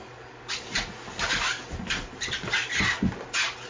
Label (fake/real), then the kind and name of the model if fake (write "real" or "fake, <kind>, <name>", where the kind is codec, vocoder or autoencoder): real